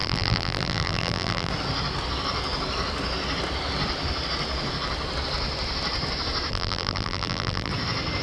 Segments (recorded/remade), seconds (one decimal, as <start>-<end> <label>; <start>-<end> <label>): 0.0-1.5 remade; 1.5-6.5 recorded; 6.5-7.7 remade; 7.7-8.2 recorded